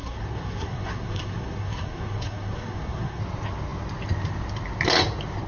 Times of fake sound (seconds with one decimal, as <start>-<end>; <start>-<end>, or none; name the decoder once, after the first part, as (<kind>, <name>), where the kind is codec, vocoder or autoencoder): 0.0-3.2 (codec, SNAC)